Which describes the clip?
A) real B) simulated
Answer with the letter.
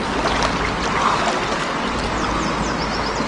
A